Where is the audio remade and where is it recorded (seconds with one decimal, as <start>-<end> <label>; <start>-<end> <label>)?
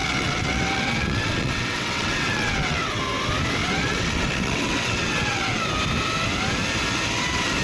0.0-3.0 remade; 3.0-3.6 recorded; 3.6-5.6 remade; 5.6-7.6 recorded